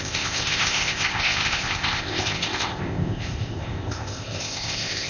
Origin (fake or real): fake